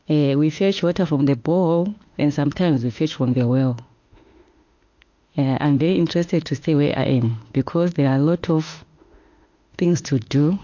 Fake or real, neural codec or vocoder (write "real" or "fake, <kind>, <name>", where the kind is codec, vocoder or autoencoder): fake, autoencoder, DAC-VAE